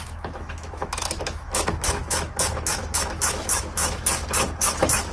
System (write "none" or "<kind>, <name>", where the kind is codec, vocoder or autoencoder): autoencoder, DAC-VAE